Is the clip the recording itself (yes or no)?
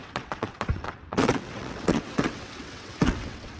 no